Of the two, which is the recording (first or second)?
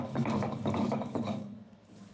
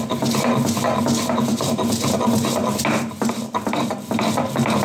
second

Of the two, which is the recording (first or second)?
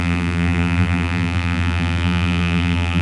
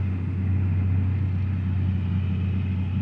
second